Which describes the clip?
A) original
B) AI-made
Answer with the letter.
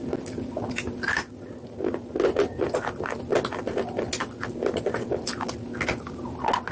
A